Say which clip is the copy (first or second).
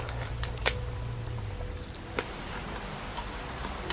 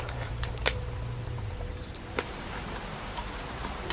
second